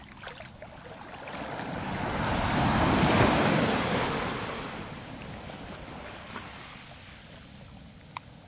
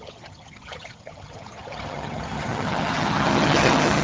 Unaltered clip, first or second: first